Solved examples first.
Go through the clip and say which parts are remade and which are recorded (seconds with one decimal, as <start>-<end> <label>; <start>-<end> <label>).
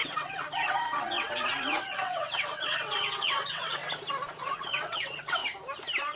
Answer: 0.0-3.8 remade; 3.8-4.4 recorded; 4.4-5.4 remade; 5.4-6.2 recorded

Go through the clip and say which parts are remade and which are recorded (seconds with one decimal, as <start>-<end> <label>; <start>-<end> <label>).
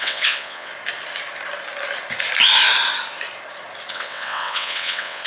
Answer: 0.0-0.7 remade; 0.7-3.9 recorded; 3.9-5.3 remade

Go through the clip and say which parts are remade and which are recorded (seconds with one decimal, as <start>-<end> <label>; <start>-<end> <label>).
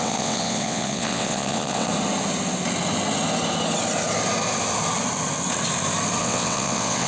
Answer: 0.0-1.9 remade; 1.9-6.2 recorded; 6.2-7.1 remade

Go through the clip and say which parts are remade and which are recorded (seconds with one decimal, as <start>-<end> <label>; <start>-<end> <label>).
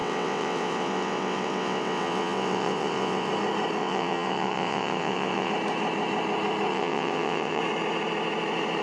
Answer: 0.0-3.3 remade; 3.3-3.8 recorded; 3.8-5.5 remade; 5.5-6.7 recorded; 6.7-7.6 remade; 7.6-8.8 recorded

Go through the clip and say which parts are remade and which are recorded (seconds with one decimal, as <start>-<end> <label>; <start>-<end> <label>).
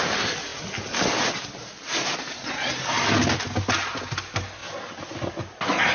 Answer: 0.0-5.9 recorded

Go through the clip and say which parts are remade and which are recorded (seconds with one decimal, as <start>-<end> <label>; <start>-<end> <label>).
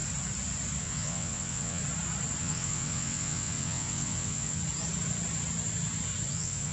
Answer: 0.0-0.8 recorded; 0.8-1.8 remade; 1.8-2.4 recorded; 2.4-4.6 remade; 4.6-6.3 recorded; 6.3-6.7 remade